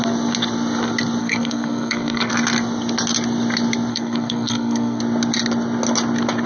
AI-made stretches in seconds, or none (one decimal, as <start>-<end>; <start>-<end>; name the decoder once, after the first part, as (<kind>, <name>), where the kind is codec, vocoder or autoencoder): 1.2-2.3 (codec, SNAC); 3.9-5.0